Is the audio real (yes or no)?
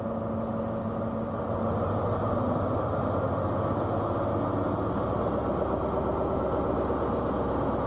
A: yes